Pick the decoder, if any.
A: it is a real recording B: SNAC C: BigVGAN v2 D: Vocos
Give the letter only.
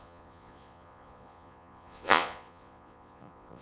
D